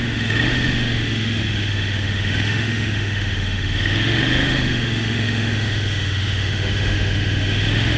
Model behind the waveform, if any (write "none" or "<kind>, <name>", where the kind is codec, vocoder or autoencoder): autoencoder, DAC-VAE